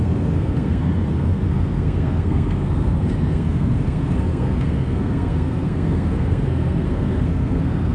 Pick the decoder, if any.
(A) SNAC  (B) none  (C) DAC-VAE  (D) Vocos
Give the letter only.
A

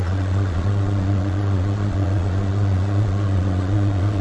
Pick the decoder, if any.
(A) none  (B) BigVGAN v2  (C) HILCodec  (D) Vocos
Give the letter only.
D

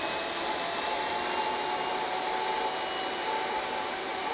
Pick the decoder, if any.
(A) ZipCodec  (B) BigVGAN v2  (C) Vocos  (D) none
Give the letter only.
D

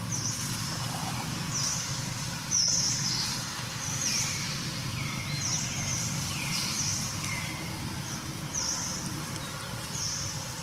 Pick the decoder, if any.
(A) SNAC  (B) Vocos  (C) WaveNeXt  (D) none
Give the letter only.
D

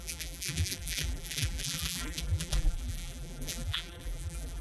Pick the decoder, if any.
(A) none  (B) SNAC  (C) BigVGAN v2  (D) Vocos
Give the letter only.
C